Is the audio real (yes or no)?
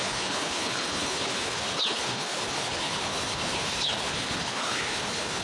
no